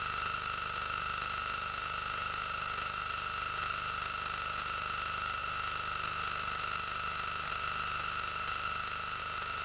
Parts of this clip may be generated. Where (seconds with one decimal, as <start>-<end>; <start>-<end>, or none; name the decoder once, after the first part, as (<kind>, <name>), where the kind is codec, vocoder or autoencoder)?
none